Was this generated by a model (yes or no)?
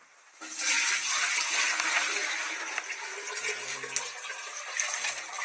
no